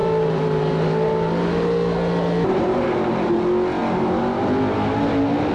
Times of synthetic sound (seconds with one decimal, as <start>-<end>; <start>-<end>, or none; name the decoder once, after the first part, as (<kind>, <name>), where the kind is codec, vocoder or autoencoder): 0.0-3.3 (vocoder, BigVGAN v2)

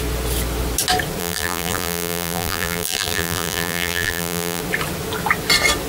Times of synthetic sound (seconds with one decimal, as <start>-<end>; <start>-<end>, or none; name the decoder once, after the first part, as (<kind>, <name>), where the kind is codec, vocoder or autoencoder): 1.2-4.6 (vocoder, BigVGAN v2)